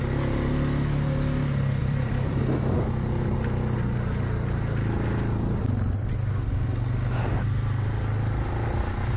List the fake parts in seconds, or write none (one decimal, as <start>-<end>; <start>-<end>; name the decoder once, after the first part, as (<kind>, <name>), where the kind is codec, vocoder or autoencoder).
1.8-2.4 (vocoder, BigVGAN v2)